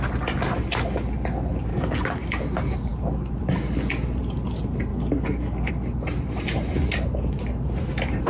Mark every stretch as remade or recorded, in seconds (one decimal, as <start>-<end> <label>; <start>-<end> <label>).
0.0-1.7 recorded; 1.7-2.2 remade; 2.2-4.9 recorded; 4.9-5.7 remade; 5.7-8.3 recorded